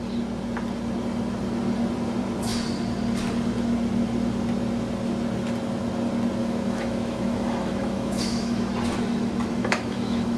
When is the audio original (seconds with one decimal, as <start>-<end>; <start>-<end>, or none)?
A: 0.0-6.4; 8.7-9.6

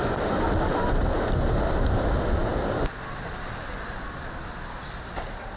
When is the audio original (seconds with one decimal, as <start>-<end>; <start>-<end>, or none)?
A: 0.0-5.6

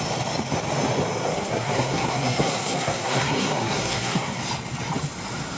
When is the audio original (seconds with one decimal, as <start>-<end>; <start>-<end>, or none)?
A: 0.0-1.3; 4.4-5.6

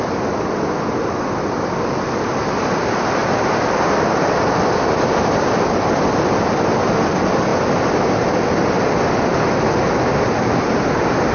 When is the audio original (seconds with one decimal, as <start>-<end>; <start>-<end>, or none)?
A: 0.0-11.3